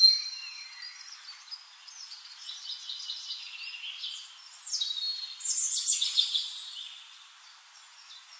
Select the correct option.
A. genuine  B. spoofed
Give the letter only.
A